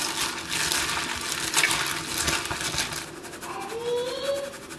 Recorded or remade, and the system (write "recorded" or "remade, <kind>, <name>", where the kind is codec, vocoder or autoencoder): recorded